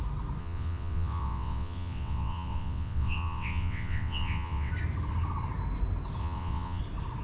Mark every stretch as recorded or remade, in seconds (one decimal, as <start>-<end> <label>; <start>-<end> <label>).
0.0-0.4 recorded; 0.4-4.7 remade; 4.7-6.2 recorded; 6.2-6.8 remade; 6.8-7.2 recorded